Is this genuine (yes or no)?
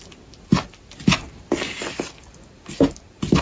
yes